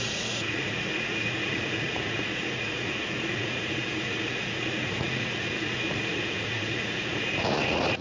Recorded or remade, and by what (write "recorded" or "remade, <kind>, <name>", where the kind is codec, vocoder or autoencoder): remade, vocoder, Vocos